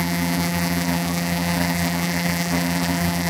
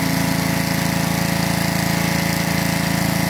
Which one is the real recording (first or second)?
second